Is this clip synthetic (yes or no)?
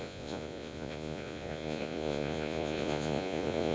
yes